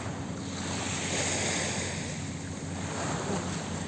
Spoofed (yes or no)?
no